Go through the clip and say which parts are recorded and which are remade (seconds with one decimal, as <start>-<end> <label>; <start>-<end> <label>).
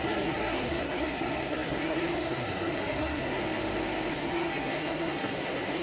0.0-3.4 remade; 3.4-4.1 recorded; 4.1-5.8 remade